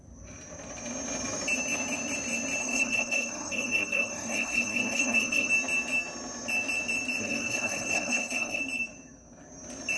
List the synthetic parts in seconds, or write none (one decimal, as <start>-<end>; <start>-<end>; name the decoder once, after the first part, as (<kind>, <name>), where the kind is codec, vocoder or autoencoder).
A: 2.6-5.5 (codec, SNAC); 7.2-8.6